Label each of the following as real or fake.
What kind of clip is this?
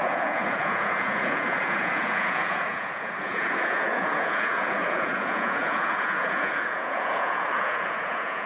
fake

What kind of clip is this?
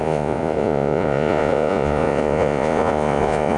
fake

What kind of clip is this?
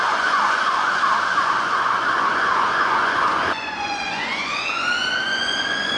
fake